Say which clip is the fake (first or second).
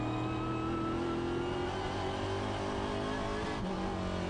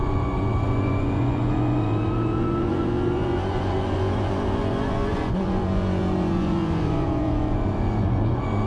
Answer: second